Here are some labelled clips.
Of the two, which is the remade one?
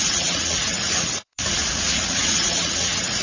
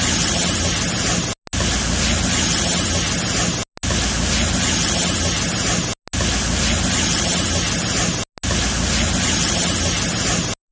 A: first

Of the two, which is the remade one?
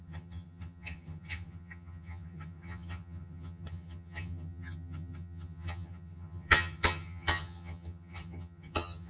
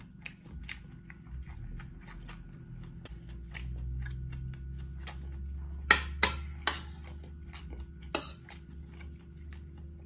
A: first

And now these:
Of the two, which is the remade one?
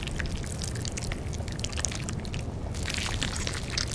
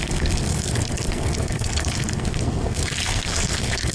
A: second